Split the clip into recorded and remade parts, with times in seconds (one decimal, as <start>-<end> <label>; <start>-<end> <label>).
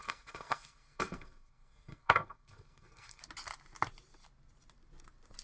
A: 0.0-3.2 remade; 3.2-5.4 recorded